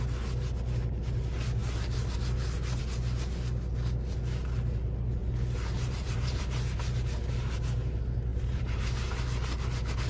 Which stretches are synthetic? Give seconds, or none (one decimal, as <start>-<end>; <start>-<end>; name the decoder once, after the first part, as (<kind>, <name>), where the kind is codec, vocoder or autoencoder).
5.2-6.4 (vocoder, BigVGAN v2); 8.3-8.8